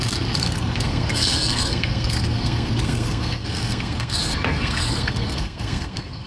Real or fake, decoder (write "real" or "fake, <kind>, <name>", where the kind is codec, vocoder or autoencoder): fake, codec, SNAC